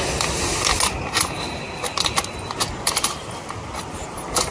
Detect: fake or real real